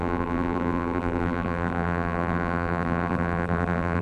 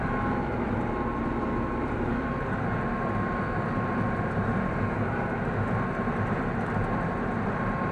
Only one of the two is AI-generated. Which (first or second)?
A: first